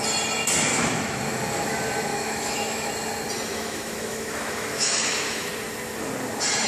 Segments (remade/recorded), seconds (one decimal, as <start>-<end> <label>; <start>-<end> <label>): 0.0-0.7 recorded; 0.7-1.2 remade; 1.2-2.1 recorded; 2.1-2.9 remade; 2.9-3.5 recorded; 3.5-5.5 remade; 5.5-6.7 recorded

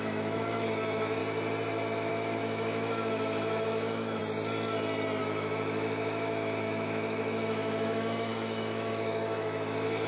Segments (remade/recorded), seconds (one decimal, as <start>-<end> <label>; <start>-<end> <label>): 0.0-1.2 remade; 1.2-2.1 recorded; 2.1-4.2 remade; 4.2-5.2 recorded; 5.2-10.1 remade